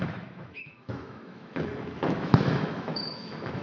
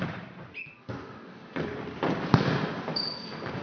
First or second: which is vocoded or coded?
first